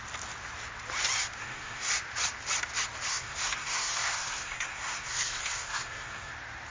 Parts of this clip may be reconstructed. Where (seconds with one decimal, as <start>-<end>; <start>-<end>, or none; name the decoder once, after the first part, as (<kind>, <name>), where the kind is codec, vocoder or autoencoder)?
1.4-1.9 (codec, SNAC); 3.1-6.3